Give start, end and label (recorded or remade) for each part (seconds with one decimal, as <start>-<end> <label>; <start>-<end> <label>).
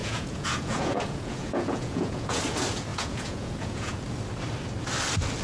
0.0-2.4 remade; 2.4-2.9 recorded; 2.9-4.0 remade; 4.0-5.4 recorded